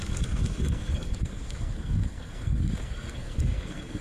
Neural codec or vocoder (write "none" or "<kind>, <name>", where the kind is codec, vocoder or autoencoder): codec, SNAC